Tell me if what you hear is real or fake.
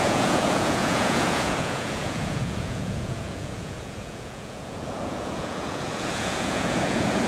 fake